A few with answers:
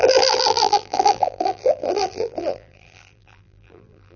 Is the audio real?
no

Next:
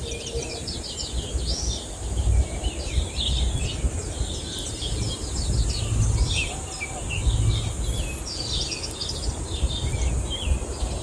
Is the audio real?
yes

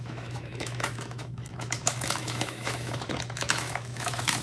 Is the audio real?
no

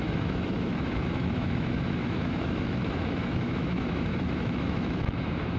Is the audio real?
no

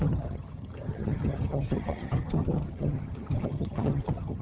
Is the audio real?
no